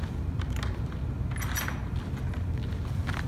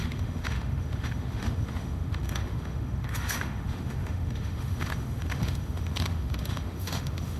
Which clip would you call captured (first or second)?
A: first